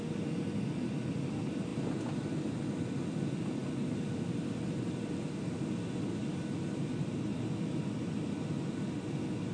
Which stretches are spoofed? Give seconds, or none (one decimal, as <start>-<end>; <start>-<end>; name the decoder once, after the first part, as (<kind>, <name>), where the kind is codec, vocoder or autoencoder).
none